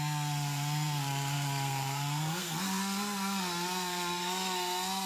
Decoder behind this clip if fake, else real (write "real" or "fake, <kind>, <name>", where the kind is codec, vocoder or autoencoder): fake, codec, SNAC